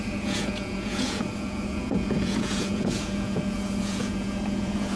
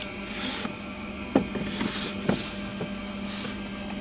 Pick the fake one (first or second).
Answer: first